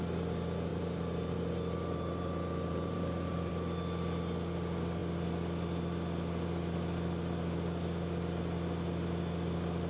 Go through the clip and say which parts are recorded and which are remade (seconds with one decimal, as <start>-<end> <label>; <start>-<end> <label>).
0.0-0.7 recorded; 0.7-3.5 remade; 3.5-9.9 recorded